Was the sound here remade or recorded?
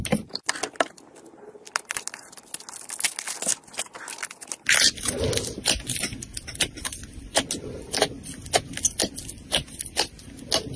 recorded